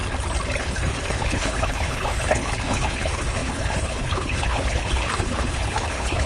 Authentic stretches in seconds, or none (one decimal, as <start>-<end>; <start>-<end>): 0.0-0.6